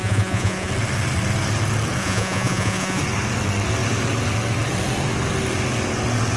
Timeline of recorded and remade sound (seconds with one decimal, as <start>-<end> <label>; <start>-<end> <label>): 0.0-0.7 remade; 0.7-2.0 recorded; 2.0-3.0 remade; 3.0-6.4 recorded